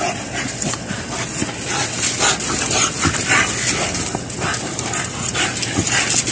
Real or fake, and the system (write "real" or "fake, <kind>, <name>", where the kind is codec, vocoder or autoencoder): real